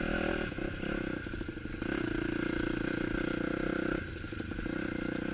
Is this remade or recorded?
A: recorded